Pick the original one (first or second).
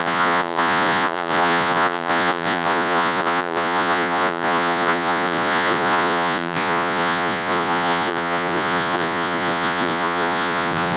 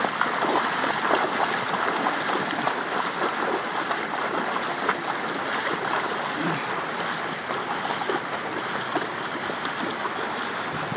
second